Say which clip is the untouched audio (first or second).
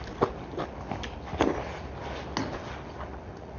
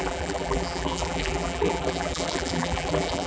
first